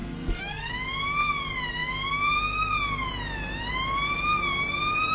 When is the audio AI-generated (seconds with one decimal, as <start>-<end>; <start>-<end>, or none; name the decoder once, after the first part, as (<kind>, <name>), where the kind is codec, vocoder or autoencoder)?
0.0-0.7 (codec, SNAC)